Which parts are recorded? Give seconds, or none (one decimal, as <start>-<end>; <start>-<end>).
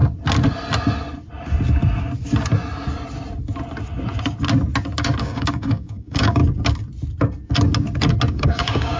0.0-5.2; 6.4-8.3